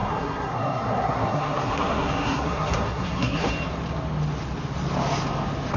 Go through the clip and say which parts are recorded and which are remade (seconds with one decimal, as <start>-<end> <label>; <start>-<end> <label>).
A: 0.0-3.5 remade; 3.5-5.8 recorded